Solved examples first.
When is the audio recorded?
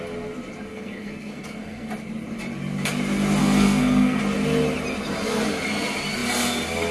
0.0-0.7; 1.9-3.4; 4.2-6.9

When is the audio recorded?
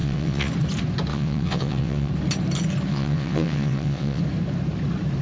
0.5-1.1; 2.1-2.9; 4.2-5.2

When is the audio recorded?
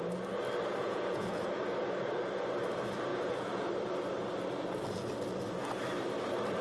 0.0-0.8; 1.6-3.1; 3.7-6.6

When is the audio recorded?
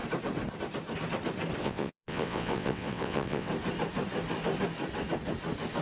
0.0-1.6; 3.5-5.8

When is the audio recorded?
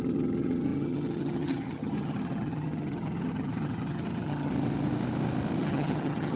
4.5-5.6